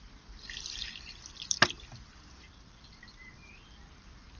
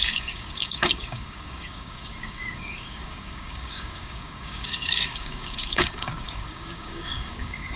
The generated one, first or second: second